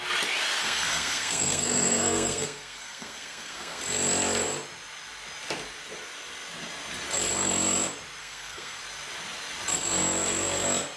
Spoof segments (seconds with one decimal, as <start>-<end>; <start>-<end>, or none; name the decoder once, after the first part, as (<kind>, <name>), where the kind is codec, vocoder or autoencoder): 0.6-3.8 (codec, SNAC); 8.2-8.8

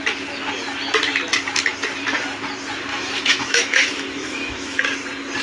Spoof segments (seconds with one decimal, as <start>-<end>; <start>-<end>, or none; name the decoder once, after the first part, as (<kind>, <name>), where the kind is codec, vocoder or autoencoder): 2.9-4.8 (autoencoder, DAC-VAE)